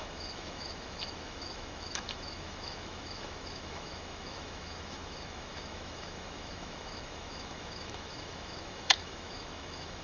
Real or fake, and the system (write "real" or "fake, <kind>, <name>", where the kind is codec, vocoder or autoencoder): fake, autoencoder, DAC-VAE